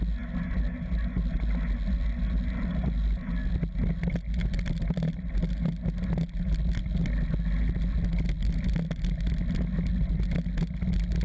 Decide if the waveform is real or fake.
real